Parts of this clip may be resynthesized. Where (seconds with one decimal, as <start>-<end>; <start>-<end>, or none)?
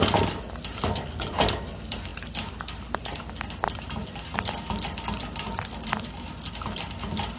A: none